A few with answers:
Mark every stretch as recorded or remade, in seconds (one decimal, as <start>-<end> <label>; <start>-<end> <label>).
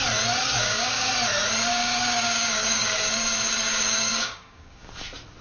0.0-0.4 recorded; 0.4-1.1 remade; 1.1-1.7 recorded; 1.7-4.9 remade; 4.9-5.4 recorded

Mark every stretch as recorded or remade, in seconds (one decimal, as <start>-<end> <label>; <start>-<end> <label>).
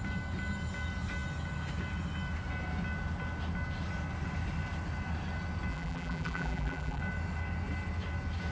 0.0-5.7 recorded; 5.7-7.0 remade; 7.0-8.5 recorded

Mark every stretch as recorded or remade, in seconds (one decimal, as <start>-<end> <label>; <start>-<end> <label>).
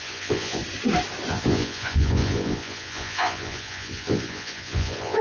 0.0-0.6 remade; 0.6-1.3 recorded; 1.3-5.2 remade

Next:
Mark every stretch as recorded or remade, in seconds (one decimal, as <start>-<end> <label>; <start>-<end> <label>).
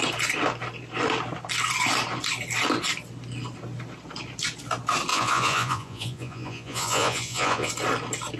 0.0-5.1 recorded; 5.1-7.7 remade; 7.7-8.4 recorded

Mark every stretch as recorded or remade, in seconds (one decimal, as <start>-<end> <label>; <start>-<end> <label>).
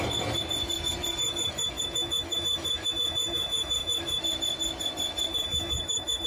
0.0-1.2 recorded; 1.2-4.2 remade; 4.2-5.3 recorded; 5.3-6.3 remade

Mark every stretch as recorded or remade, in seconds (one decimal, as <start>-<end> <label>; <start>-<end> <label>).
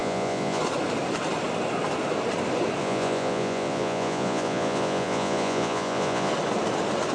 0.0-0.6 remade; 0.6-2.8 recorded; 2.8-6.3 remade; 6.3-7.1 recorded